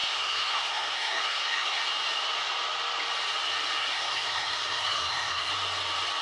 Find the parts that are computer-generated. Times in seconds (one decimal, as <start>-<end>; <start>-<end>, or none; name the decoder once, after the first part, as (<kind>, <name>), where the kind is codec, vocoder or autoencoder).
0.0-1.8 (codec, SNAC); 3.8-5.5